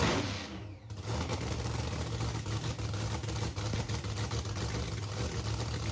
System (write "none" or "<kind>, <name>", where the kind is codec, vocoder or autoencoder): none